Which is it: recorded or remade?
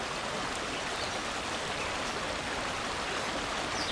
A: recorded